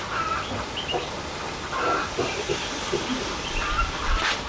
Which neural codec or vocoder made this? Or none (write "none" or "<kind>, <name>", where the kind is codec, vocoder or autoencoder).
none